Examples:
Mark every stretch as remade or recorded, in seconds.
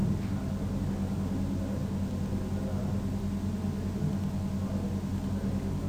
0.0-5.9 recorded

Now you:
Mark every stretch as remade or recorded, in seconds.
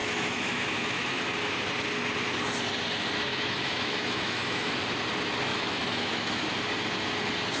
0.0-1.2 remade; 1.2-3.3 recorded; 3.3-4.7 remade; 4.7-5.5 recorded; 5.5-6.5 remade; 6.5-7.6 recorded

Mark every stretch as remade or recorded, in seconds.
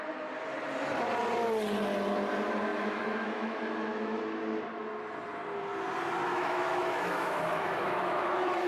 0.0-2.7 recorded; 2.7-4.2 remade; 4.2-6.3 recorded; 6.3-8.7 remade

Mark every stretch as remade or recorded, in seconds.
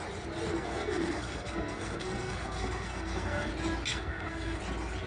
0.0-0.5 recorded; 0.5-3.5 remade; 3.5-3.9 recorded; 3.9-4.6 remade; 4.6-5.1 recorded